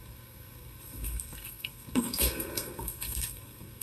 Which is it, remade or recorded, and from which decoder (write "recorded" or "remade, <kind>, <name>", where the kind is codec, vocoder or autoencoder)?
remade, codec, SNAC